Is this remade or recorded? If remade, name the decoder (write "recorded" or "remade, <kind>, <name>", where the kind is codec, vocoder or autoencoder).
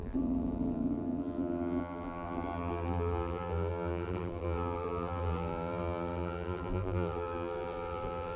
remade, vocoder, BigVGAN v2